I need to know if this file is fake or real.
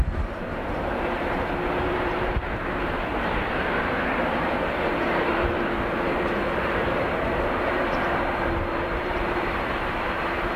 fake